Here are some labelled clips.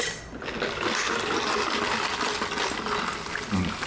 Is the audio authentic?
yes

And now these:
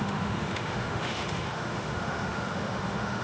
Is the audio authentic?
no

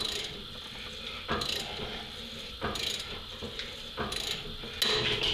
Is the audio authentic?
yes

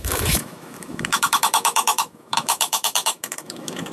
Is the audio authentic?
no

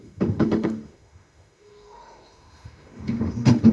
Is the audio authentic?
no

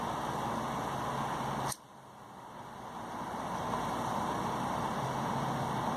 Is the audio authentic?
yes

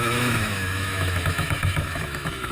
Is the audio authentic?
no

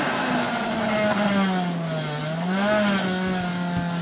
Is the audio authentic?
yes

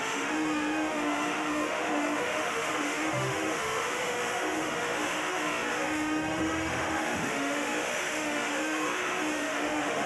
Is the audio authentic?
no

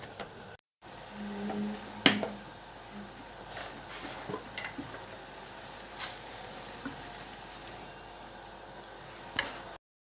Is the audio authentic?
yes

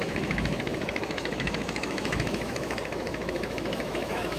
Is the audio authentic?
no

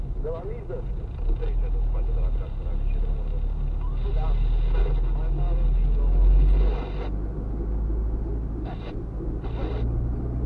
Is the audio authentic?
yes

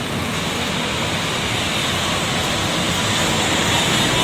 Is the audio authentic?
yes